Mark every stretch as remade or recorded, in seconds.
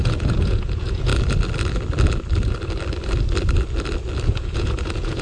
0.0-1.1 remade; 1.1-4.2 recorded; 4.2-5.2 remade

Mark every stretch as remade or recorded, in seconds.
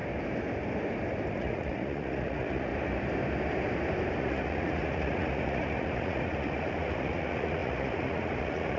0.0-1.3 recorded; 1.3-2.7 remade; 2.7-4.2 recorded; 4.2-8.8 remade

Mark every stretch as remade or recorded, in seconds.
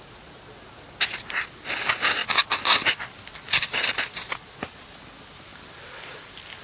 0.0-6.6 recorded